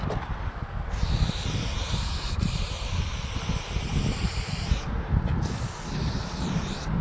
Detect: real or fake real